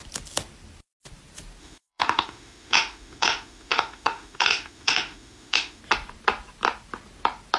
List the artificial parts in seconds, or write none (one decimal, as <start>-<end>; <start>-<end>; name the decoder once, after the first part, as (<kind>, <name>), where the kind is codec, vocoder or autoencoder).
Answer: 1.6-5.8 (autoencoder, DAC-VAE)